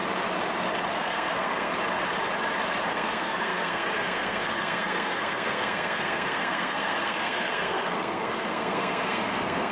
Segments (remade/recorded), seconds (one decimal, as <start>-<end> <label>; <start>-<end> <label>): 0.0-0.9 recorded; 0.9-1.7 remade; 1.7-2.9 recorded; 2.9-9.7 remade